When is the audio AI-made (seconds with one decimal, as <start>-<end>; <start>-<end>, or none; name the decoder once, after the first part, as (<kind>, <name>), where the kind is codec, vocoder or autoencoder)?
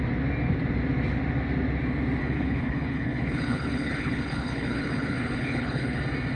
2.2-6.0 (codec, HILCodec)